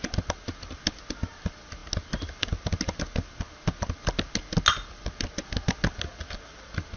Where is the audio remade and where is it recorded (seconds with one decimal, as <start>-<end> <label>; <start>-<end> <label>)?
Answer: 0.0-7.0 recorded